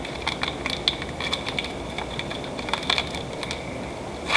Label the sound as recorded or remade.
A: recorded